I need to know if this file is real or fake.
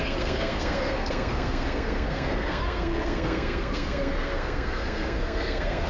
fake